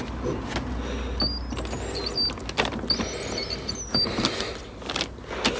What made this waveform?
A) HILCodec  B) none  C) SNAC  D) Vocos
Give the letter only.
B